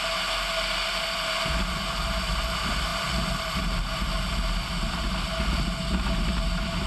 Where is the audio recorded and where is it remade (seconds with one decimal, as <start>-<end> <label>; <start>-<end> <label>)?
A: 0.0-6.9 recorded